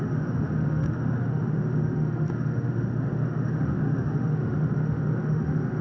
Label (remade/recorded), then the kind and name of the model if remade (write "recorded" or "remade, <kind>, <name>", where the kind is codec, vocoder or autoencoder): remade, autoencoder, DAC-VAE